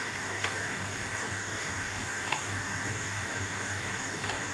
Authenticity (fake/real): fake